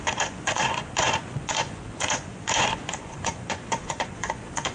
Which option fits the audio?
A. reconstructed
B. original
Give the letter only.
A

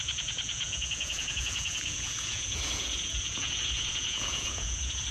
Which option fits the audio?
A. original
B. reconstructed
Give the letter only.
B